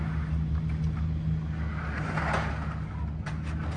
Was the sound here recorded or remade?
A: recorded